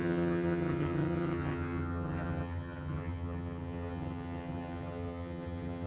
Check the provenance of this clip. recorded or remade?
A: remade